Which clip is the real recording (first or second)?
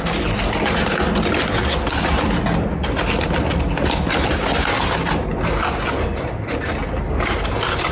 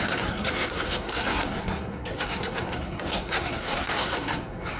first